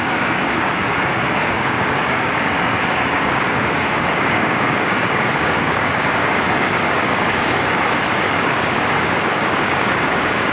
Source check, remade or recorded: remade